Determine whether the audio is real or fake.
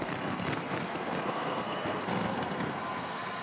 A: fake